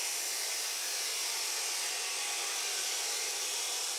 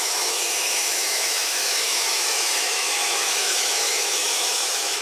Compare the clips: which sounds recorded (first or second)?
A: first